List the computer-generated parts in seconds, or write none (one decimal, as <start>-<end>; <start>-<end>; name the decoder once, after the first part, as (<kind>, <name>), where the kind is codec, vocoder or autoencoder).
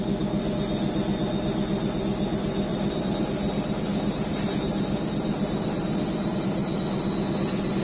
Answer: 2.7-3.2 (vocoder, BigVGAN v2); 3.9-6.3